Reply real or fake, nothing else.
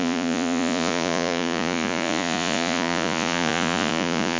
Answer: fake